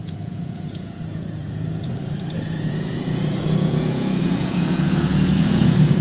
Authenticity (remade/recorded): remade